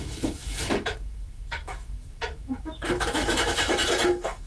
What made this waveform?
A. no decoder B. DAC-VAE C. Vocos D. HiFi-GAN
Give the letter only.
B